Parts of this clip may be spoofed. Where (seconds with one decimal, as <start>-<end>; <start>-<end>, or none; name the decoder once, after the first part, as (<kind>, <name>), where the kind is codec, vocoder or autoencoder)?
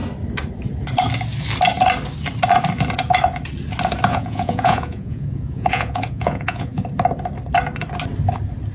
4.1-6.8 (vocoder, Vocos)